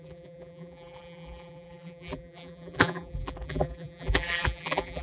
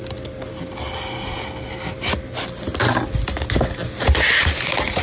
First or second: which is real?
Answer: second